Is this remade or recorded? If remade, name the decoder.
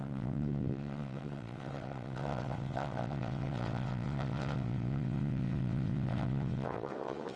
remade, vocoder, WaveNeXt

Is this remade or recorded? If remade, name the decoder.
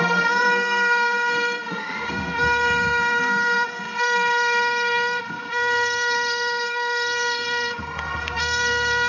remade, codec, SNAC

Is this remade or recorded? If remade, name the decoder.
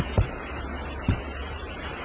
remade, vocoder, BigVGAN v2